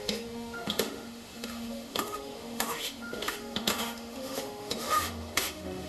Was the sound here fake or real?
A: fake